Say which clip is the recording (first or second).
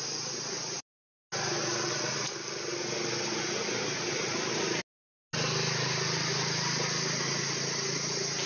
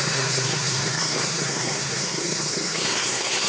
first